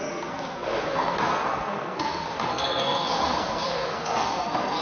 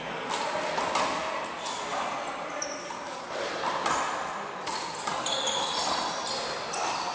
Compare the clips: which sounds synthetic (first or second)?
first